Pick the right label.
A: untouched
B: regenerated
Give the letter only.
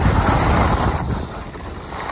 A